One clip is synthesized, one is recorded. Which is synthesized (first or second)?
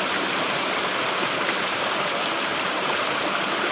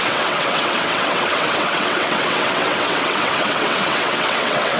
second